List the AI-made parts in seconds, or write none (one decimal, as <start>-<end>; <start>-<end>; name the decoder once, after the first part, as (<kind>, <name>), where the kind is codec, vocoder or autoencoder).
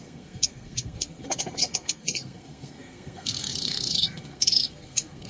0.0-5.3 (codec, SNAC)